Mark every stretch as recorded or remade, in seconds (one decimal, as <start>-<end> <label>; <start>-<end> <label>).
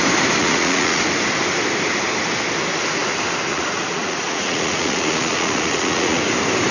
0.0-0.4 recorded; 0.4-1.0 remade; 1.0-3.5 recorded; 3.5-6.2 remade; 6.2-6.7 recorded